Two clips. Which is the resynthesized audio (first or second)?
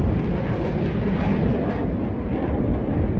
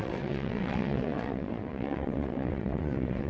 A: second